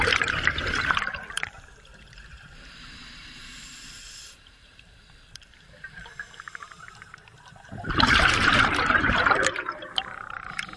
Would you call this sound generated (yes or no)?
yes